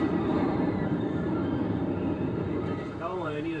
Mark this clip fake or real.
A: fake